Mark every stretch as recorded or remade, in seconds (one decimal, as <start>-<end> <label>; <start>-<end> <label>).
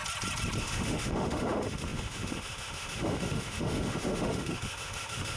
0.0-0.6 recorded; 0.6-5.4 remade